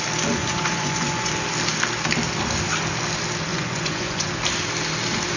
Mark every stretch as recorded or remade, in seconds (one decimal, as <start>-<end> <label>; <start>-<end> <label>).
0.0-0.4 recorded; 0.4-1.3 remade; 1.3-3.5 recorded; 3.5-4.3 remade; 4.3-5.4 recorded

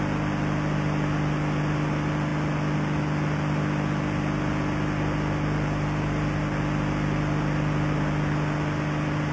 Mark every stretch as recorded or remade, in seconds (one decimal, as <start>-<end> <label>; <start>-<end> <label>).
0.0-9.3 recorded

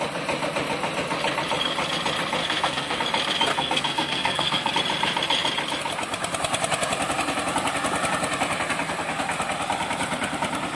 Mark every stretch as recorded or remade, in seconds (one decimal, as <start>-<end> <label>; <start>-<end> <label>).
0.0-2.4 recorded; 2.4-3.0 remade; 3.0-3.5 recorded; 3.5-4.7 remade; 4.7-10.8 recorded

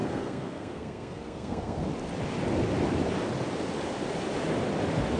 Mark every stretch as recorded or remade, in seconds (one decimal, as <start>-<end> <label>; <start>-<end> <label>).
0.0-1.8 remade; 1.8-5.2 recorded

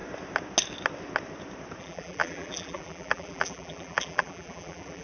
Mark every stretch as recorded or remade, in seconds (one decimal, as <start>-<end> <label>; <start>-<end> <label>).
0.0-1.8 recorded; 1.8-5.0 remade

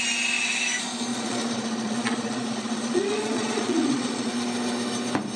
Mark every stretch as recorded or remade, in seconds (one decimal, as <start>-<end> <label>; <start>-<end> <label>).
0.0-1.1 recorded; 1.1-4.3 remade; 4.3-5.4 recorded

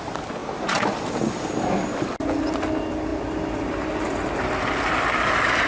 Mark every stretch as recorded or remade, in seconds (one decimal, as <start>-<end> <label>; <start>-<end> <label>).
0.0-5.7 recorded